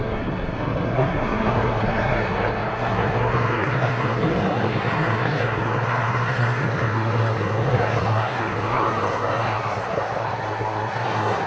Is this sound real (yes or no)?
no